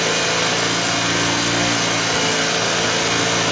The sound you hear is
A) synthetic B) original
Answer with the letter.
B